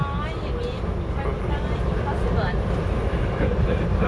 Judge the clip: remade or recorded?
recorded